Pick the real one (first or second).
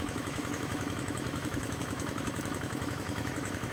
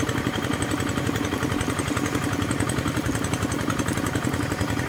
second